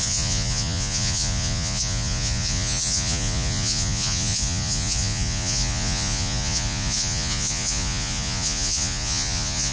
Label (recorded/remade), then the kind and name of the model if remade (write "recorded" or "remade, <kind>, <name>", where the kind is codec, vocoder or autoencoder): remade, vocoder, Vocos